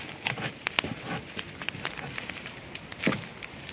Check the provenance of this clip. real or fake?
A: real